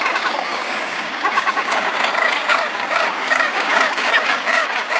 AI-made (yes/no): yes